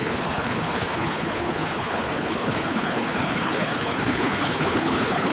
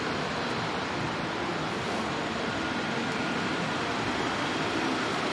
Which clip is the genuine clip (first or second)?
second